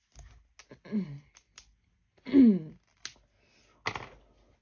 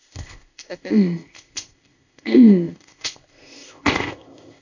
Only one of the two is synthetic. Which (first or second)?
second